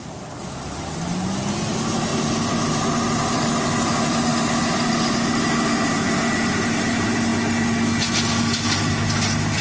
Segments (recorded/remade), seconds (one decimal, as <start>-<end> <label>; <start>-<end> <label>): 0.0-9.6 recorded